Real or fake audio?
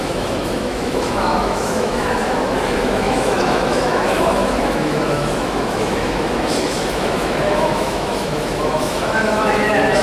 fake